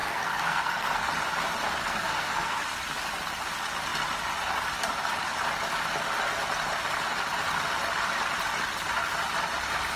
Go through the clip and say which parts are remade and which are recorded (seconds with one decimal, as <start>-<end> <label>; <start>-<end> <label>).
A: 0.0-1.1 remade; 1.1-1.8 recorded; 1.8-2.6 remade; 2.6-10.0 recorded